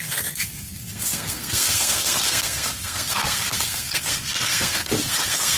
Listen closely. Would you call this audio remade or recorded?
remade